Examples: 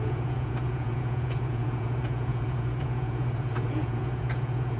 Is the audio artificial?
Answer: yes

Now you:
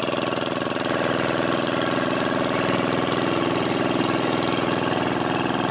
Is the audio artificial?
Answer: no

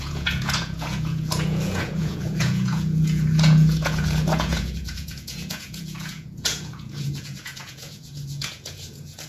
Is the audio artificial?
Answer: yes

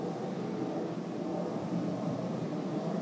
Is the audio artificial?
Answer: no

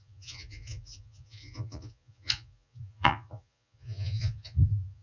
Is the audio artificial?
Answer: yes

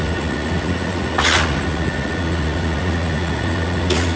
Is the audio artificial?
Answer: yes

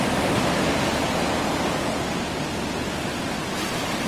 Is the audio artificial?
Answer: no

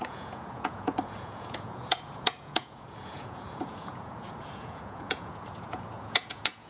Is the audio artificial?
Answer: yes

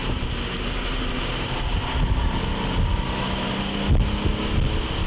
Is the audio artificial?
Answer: no